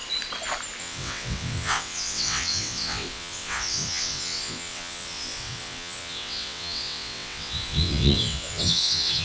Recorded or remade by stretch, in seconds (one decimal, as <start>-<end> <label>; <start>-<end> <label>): 0.0-0.8 recorded; 0.8-9.2 remade